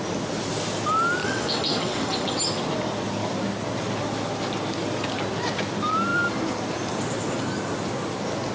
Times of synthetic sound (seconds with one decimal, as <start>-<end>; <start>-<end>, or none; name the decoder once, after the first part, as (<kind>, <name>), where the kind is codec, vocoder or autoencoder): 1.2-2.4 (vocoder, WaveNeXt)